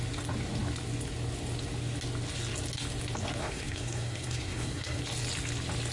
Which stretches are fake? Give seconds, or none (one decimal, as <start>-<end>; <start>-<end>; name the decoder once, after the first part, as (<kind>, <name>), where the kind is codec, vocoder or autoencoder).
3.4-5.0 (codec, SNAC)